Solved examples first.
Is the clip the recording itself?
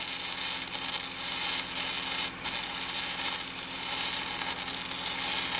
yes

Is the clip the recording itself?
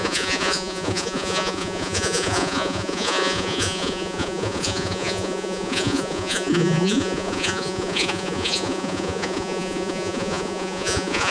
no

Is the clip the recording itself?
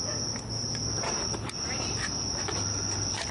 yes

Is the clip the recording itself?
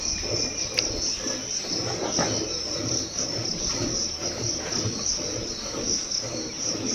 yes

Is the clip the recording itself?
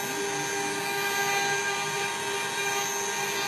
yes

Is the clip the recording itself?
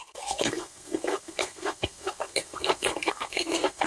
no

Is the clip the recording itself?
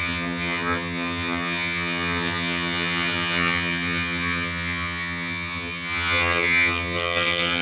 no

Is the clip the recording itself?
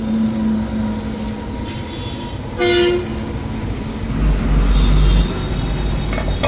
yes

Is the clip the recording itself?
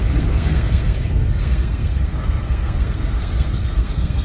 no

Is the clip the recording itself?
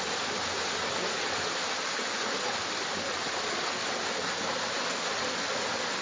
yes